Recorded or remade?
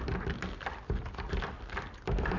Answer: recorded